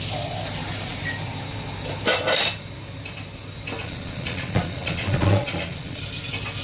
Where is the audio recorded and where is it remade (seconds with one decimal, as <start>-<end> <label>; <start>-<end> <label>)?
0.0-3.8 recorded; 3.8-6.0 remade; 6.0-6.6 recorded